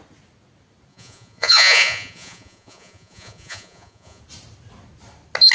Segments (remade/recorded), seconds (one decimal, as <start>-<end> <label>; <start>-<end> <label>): 0.0-0.9 recorded; 0.9-4.2 remade; 4.2-5.5 recorded